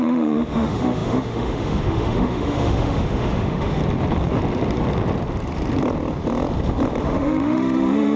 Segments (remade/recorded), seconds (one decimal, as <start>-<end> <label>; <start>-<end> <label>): 0.0-3.8 remade; 3.8-7.0 recorded; 7.0-8.2 remade